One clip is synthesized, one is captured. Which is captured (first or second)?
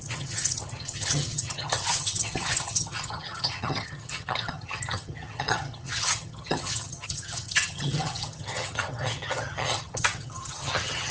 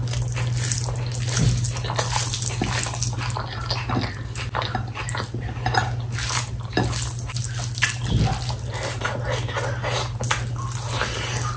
second